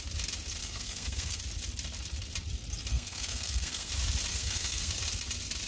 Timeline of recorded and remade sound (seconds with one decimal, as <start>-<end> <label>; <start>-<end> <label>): 0.0-0.6 recorded; 0.6-1.4 remade; 1.4-2.9 recorded; 2.9-3.9 remade; 3.9-4.3 recorded; 4.3-4.9 remade; 4.9-5.7 recorded